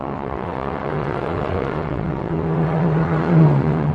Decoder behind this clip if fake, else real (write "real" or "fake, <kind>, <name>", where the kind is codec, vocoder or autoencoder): fake, vocoder, WaveNeXt